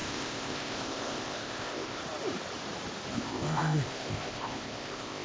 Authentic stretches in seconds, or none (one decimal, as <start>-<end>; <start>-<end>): 2.0-3.1